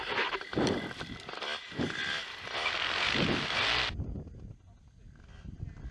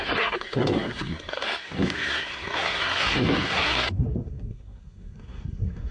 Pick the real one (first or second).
first